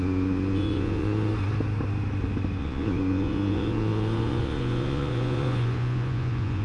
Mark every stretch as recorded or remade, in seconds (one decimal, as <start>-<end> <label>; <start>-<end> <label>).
0.0-1.3 remade; 1.3-2.6 recorded; 2.6-6.6 remade